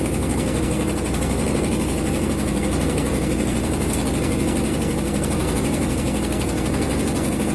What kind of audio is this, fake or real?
fake